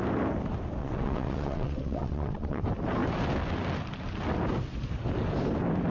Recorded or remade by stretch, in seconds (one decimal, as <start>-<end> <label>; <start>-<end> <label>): 0.0-0.8 recorded; 0.8-2.6 remade; 2.6-5.9 recorded